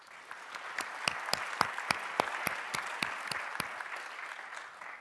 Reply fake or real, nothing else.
real